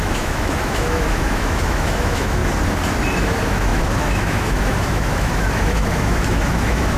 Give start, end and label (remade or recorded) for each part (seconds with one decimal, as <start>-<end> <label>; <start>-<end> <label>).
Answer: 0.0-2.4 remade; 2.4-3.2 recorded; 3.2-7.0 remade